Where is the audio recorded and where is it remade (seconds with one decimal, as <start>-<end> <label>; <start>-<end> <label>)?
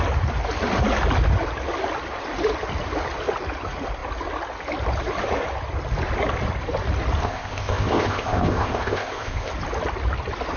0.0-7.2 recorded; 7.2-9.5 remade; 9.5-10.6 recorded